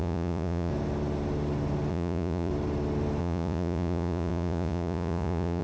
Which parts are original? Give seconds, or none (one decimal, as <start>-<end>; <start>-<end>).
0.7-1.9; 2.5-3.2